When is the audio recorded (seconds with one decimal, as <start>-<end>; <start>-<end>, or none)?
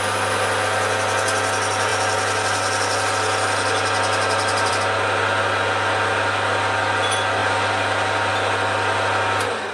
0.0-1.9; 4.7-7.4; 8.3-9.7